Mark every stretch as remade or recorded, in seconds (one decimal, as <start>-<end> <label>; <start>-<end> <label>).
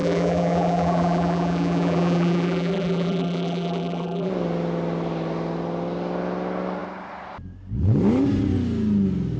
0.0-4.3 remade; 4.3-9.4 recorded